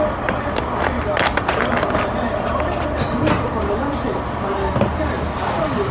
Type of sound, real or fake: real